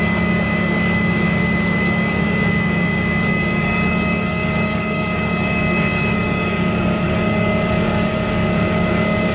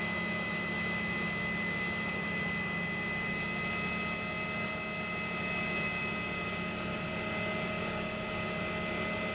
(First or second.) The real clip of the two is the second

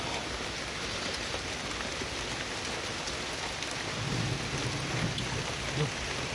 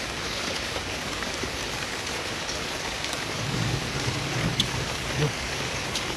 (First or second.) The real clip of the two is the first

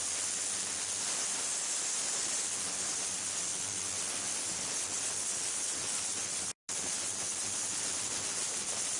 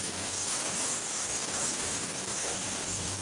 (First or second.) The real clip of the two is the first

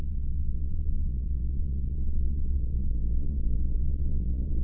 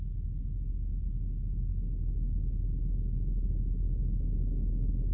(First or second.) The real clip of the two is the second